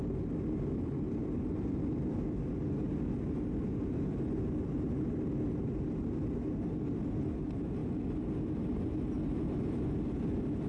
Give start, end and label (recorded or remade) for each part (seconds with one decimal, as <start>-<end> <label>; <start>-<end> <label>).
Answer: 0.0-10.7 recorded